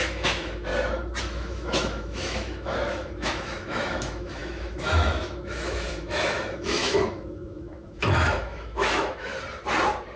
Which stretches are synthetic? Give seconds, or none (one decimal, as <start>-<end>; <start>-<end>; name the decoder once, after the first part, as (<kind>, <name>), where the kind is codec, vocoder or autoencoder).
0.0-0.7 (autoencoder, DAC-VAE); 1.2-9.3